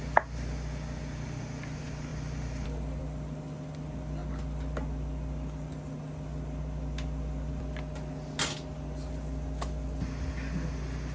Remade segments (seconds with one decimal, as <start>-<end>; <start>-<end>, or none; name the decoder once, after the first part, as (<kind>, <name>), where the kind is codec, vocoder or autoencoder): none